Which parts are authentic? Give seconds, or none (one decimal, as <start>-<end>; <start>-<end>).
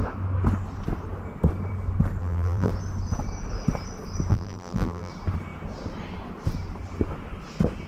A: 0.0-2.2; 2.7-4.3; 5.1-7.9